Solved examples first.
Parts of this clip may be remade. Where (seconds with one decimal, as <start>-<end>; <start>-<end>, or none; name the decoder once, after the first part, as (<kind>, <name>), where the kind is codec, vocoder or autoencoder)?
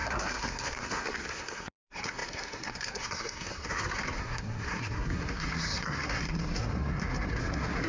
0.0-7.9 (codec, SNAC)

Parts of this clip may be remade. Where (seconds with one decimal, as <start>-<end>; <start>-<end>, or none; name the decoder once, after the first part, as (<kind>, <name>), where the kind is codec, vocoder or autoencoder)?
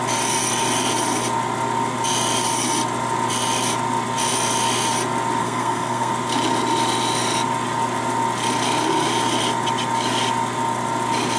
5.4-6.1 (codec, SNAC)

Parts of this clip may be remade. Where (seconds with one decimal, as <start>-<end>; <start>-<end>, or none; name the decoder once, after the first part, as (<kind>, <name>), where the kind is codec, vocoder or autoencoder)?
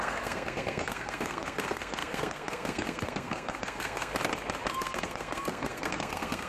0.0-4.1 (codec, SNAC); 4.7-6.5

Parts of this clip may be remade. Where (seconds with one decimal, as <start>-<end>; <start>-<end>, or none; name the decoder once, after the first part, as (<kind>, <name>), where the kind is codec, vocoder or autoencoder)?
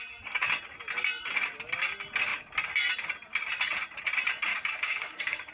4.5-5.5 (codec, DAC)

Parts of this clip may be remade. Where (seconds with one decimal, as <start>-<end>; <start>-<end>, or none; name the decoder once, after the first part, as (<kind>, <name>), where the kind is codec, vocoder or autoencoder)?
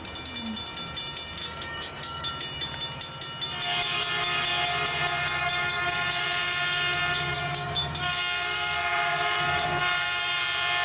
1.4-2.3 (codec, DAC); 5.4-10.4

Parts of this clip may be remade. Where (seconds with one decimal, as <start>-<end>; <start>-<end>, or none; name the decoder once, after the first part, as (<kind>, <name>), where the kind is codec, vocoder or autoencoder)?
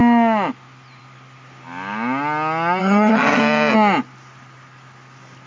2.8-3.4 (vocoder, HiFi-GAN)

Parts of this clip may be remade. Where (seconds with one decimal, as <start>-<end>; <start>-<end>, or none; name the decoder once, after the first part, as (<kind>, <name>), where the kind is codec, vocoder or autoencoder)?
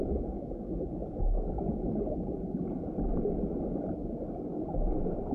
none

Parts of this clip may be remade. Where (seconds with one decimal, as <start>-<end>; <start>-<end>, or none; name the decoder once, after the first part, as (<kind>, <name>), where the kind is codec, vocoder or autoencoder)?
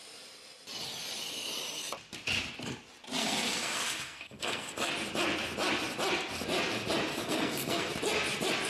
3.2-4.9 (codec, SNAC); 7.1-7.9